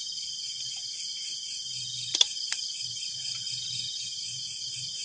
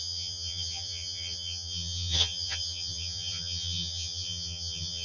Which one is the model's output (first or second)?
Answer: second